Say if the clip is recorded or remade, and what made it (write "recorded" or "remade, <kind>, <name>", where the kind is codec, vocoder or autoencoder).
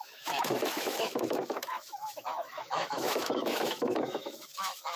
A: remade, autoencoder, DAC-VAE